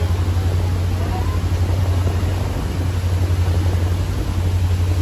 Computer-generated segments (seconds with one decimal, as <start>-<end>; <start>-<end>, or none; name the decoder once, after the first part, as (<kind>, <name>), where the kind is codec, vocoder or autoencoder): none